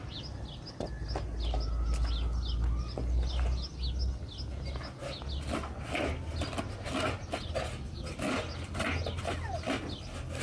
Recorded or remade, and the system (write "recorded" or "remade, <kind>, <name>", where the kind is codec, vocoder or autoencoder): recorded